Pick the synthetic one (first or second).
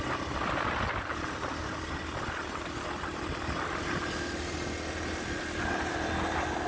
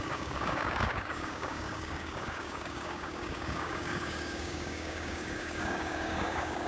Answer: second